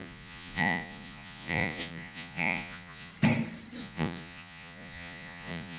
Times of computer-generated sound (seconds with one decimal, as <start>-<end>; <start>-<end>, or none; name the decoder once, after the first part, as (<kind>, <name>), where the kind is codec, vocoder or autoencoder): 0.0-3.1 (vocoder, Vocos); 3.8-5.8